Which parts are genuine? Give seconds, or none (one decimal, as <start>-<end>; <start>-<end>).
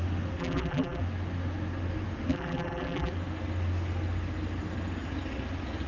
0.0-0.4; 1.0-2.3; 3.1-5.9